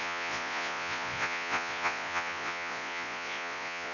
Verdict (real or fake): fake